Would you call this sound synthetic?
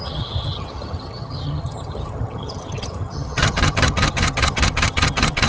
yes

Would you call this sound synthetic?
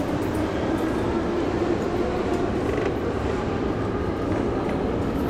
no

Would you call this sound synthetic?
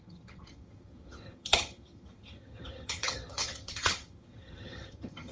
yes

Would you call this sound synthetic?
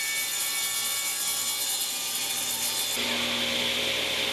no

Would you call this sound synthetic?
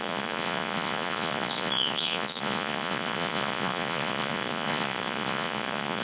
yes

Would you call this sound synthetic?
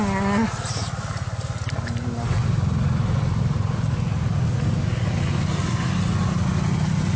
no